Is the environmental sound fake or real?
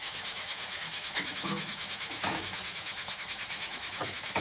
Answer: fake